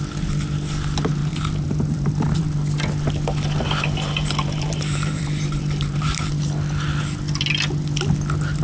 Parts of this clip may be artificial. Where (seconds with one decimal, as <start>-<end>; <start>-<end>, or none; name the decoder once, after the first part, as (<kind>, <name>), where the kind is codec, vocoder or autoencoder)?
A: 1.2-2.5 (vocoder, BigVGAN v2); 4.2-6.3